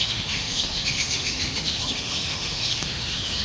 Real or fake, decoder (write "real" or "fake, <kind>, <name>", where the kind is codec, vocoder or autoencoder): fake, autoencoder, DAC-VAE